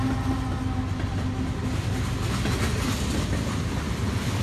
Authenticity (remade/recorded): recorded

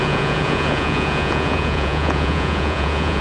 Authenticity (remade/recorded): remade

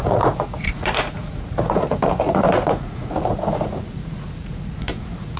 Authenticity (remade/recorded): remade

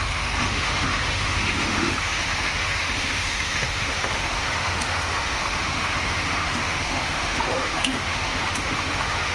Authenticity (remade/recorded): remade